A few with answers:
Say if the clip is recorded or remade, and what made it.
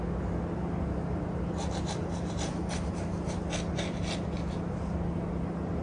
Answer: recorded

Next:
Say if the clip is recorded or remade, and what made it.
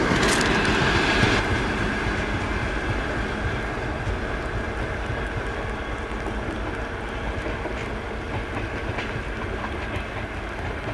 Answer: recorded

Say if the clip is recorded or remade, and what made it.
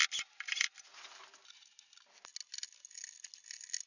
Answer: recorded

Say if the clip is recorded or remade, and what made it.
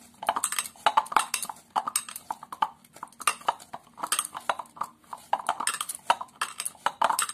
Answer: recorded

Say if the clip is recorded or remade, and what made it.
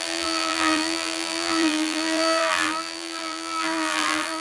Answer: remade, vocoder, BigVGAN v2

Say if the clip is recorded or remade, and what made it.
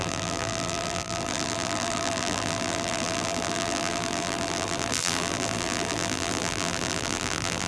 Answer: remade, vocoder, BigVGAN v2